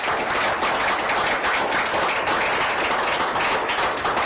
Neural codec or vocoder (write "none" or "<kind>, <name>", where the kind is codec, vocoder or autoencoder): none